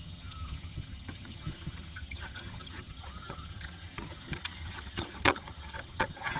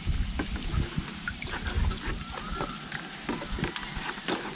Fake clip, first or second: first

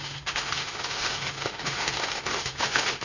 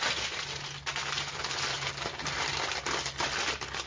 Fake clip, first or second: first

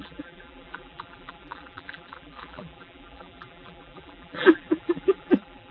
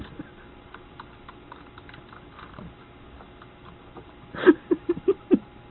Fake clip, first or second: first